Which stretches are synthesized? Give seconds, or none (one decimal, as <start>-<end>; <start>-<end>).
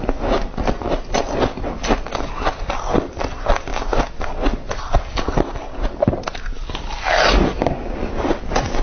none